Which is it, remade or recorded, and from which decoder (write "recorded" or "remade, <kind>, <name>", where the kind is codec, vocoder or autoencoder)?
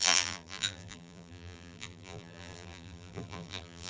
remade, vocoder, BigVGAN v2